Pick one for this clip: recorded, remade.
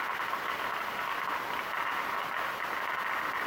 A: recorded